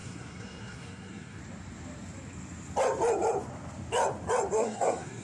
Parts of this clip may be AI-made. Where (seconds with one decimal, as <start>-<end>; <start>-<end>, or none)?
0.0-1.4; 4.5-5.2

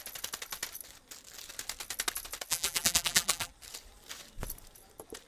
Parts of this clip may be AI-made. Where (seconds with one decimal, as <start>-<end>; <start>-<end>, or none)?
2.5-3.5